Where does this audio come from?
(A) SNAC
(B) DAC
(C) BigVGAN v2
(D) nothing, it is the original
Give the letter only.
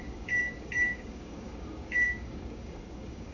B